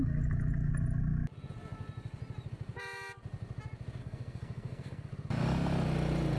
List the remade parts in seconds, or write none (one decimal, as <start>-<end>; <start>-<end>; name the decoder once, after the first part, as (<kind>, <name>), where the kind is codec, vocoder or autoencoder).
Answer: 4.0-5.1 (codec, SNAC)